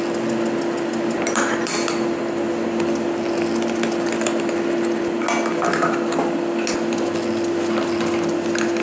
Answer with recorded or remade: recorded